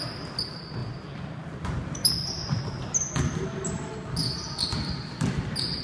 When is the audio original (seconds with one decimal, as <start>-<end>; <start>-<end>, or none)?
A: 0.0-5.8